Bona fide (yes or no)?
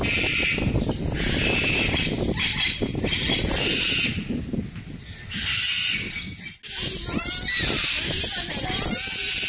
yes